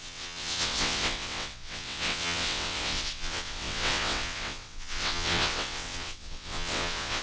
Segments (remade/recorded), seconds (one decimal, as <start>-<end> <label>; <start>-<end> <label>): 0.0-7.2 remade